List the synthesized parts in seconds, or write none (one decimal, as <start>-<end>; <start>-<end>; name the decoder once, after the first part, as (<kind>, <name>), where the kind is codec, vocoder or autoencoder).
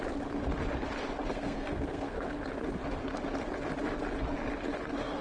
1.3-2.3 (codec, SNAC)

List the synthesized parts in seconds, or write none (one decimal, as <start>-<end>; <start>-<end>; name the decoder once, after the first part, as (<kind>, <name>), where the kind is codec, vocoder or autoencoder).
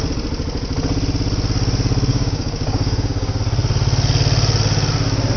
2.1-3.4 (codec, DAC)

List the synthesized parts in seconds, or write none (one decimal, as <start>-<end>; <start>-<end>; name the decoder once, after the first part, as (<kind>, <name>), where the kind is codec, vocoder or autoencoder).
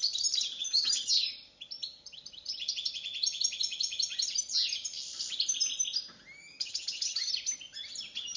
0.6-1.1 (vocoder, HiFi-GAN); 6.4-7.3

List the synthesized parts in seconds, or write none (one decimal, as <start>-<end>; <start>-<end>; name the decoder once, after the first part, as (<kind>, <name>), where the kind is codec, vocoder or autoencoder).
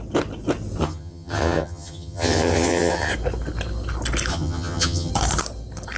0.8-3.1 (vocoder, HiFi-GAN); 4.3-5.1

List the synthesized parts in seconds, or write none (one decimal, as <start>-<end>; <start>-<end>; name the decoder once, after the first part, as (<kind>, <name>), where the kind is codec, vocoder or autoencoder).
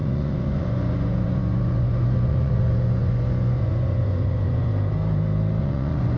0.0-4.7 (vocoder, Vocos); 5.6-6.2